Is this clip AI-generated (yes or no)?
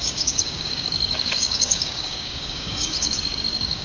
yes